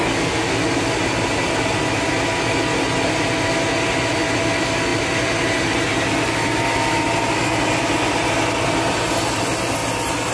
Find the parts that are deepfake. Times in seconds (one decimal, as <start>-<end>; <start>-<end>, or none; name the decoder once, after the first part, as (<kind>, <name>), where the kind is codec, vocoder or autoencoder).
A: none